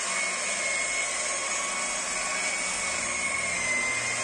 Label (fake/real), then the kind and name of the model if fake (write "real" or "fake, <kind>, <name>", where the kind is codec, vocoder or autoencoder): real